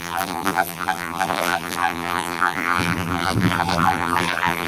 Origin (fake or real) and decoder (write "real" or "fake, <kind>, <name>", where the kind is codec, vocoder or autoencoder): fake, vocoder, BigVGAN v2